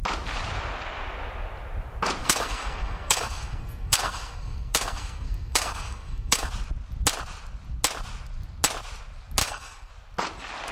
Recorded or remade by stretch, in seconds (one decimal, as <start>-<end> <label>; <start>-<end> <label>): 0.0-2.2 recorded; 2.2-6.5 remade; 6.5-9.4 recorded; 9.4-9.9 remade; 9.9-10.7 recorded